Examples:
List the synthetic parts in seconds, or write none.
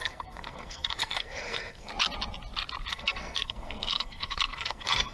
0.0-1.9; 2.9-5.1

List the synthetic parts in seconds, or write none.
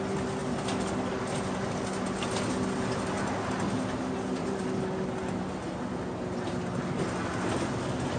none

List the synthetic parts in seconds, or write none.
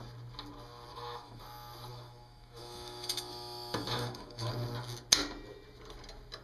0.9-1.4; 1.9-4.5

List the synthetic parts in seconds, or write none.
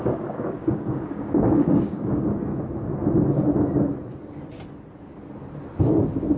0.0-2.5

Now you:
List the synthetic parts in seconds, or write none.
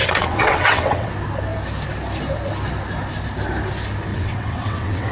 0.0-1.1; 4.1-5.1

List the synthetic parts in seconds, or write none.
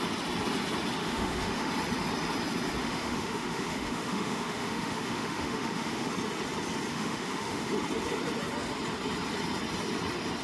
1.0-1.7; 2.8-6.1; 6.9-7.7